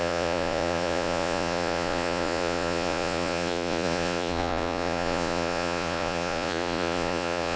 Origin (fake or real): fake